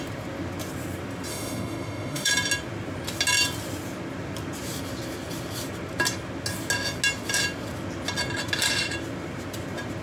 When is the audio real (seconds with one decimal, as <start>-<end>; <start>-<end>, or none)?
0.0-1.3; 2.3-10.0